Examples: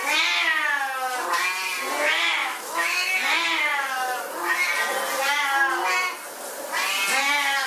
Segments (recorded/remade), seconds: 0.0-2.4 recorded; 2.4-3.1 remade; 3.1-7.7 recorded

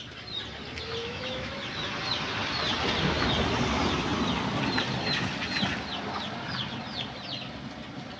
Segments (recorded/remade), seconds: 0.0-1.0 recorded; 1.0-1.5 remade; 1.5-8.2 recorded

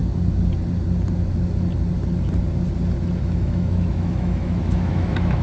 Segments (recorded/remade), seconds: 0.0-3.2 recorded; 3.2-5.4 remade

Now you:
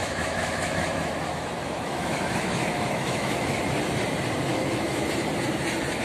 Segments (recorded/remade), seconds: 0.0-3.6 remade; 3.6-4.5 recorded; 4.5-5.1 remade; 5.1-6.0 recorded

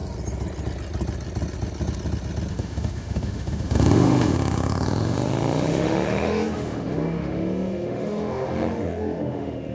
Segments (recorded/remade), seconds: 0.0-2.5 recorded; 2.5-9.7 remade

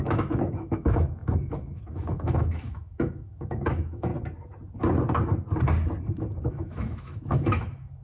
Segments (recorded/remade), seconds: 0.0-4.1 remade; 4.1-6.5 recorded; 6.5-8.0 remade

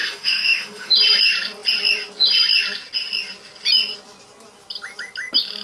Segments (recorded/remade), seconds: 0.0-0.9 remade; 0.9-5.6 recorded

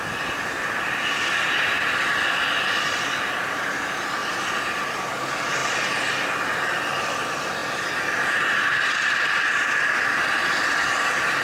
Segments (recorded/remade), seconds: 0.0-11.4 recorded